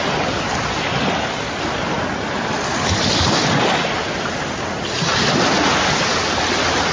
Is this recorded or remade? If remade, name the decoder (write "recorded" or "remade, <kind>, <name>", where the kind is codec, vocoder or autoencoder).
recorded